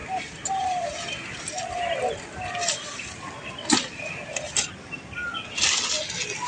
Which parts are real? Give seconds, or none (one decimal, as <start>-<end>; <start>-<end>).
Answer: 0.0-6.5